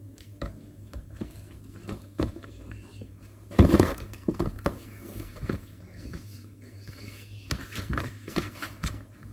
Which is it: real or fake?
fake